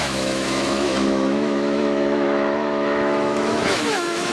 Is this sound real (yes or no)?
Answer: no